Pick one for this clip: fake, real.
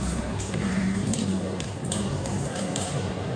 fake